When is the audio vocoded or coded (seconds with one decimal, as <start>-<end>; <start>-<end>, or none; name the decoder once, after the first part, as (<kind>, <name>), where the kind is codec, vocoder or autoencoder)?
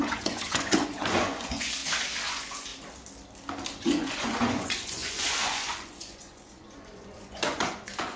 0.0-1.8 (vocoder, Vocos); 2.3-2.7; 3.8-8.2